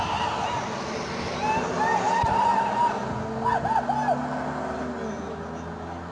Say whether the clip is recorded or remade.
recorded